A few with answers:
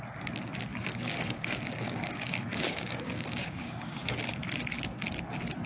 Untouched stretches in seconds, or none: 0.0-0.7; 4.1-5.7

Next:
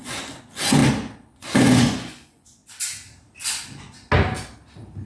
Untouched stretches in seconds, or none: 0.8-1.4; 2.6-5.1

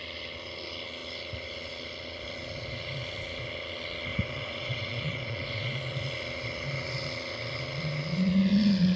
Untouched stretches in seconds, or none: 0.0-4.1; 5.8-9.0

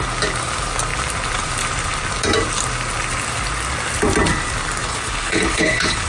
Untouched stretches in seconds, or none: 0.0-4.8

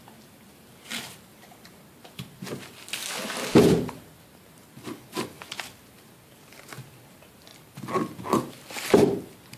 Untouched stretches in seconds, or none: 0.0-9.6